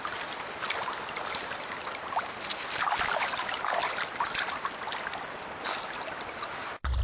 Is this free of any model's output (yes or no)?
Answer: yes